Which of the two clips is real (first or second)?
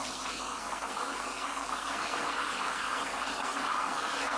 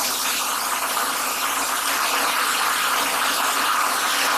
second